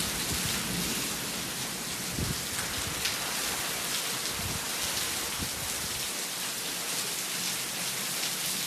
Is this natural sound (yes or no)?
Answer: yes